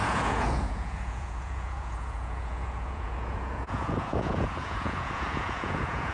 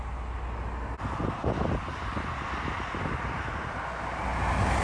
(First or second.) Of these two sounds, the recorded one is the second